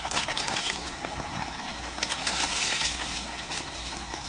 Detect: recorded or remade remade